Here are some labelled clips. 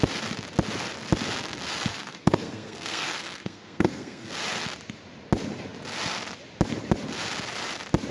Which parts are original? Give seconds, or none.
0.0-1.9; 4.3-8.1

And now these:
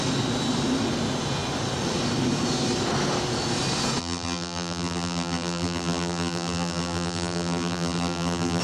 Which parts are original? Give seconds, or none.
0.0-4.0